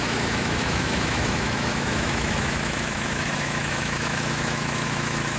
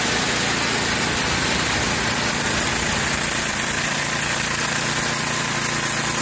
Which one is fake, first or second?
first